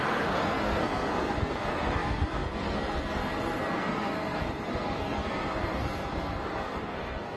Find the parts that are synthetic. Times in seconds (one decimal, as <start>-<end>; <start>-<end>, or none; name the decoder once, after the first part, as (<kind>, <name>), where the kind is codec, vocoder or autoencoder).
0.0-7.4 (codec, SNAC)